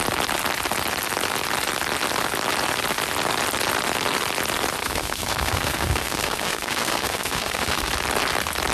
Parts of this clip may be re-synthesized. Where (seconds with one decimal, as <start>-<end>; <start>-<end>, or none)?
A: 4.8-7.9